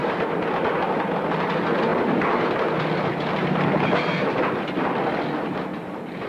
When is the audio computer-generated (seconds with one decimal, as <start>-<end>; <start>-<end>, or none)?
0.0-5.7